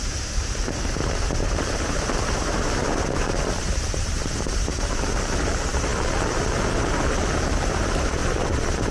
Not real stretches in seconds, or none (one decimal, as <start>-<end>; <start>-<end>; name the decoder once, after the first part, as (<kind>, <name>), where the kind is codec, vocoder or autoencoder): 0.0-5.9 (vocoder, BigVGAN v2); 6.9-8.2